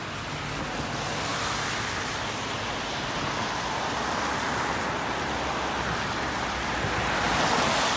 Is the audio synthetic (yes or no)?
no